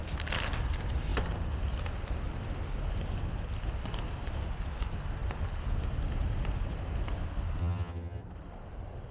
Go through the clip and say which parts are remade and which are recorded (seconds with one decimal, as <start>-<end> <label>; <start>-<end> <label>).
0.0-7.6 recorded; 7.6-8.2 remade; 8.2-9.1 recorded